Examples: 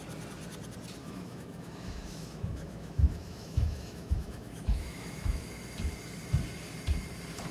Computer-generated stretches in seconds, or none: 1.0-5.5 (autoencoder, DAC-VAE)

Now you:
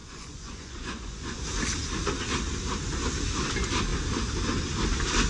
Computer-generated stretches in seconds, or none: 0.0-1.4 (vocoder, Vocos)